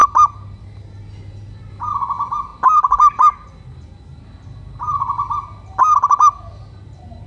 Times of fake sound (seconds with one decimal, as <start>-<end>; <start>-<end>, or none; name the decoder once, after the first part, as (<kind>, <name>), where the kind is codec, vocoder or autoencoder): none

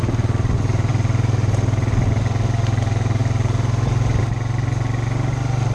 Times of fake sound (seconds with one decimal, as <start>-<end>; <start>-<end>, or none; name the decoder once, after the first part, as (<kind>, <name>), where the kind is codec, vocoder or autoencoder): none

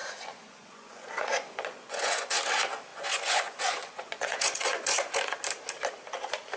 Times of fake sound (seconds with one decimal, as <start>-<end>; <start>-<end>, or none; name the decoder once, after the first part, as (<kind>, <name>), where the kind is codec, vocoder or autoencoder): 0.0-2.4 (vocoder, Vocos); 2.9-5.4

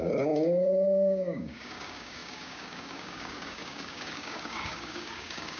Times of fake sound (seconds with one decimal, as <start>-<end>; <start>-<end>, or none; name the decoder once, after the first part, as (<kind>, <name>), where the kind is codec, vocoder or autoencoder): 0.0-5.6 (codec, DAC)

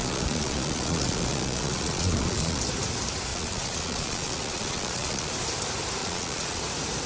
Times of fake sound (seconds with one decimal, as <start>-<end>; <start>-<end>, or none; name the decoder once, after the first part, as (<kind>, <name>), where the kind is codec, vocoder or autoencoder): 0.0-2.6 (vocoder, Vocos); 3.3-5.3; 6.0-6.6

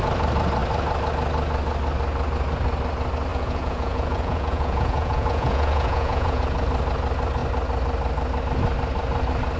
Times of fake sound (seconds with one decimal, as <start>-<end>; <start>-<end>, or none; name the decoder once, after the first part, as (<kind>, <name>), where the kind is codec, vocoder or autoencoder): 3.3-6.4 (vocoder, Vocos)

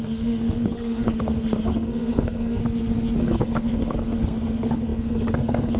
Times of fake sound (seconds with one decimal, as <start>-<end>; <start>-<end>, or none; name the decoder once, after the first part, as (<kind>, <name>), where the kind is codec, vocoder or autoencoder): 0.0-2.6 (codec, SNAC); 3.2-5.8

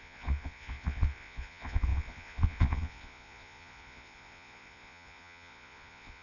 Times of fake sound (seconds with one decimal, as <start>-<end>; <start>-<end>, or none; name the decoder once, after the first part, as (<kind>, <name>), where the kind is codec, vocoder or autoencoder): 0.0-6.2 (vocoder, Vocos)